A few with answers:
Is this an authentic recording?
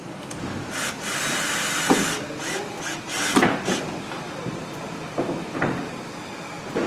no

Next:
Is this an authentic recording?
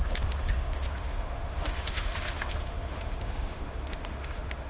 no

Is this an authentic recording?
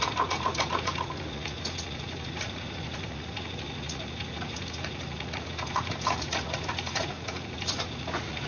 no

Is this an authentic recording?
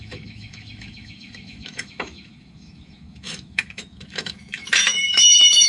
no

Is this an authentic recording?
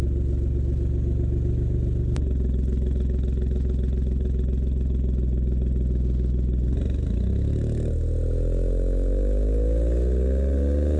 yes